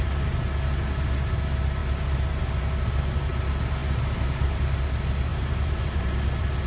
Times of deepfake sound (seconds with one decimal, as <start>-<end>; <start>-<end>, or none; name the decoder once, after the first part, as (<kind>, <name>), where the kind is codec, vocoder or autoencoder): 3.8-4.6 (vocoder, BigVGAN v2); 5.3-6.1